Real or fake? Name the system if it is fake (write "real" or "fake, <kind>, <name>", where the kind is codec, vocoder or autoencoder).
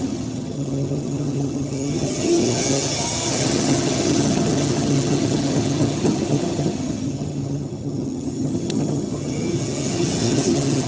fake, vocoder, HiFi-GAN